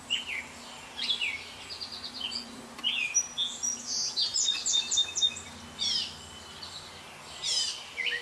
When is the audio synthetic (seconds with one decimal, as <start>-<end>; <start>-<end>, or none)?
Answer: 1.9-2.5; 4.3-4.8